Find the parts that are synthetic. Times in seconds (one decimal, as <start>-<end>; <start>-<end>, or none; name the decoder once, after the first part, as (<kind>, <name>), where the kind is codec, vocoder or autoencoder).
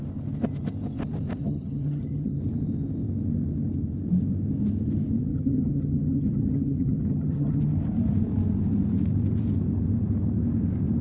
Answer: 1.4-2.4 (vocoder, HiFi-GAN); 5.2-7.6